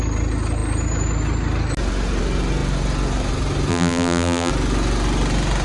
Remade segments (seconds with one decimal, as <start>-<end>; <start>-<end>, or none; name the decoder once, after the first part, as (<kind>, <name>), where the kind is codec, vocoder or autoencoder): 3.7-4.5 (vocoder, BigVGAN v2)